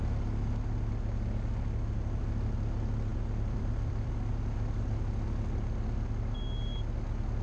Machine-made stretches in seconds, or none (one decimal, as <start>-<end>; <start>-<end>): 3.1-4.1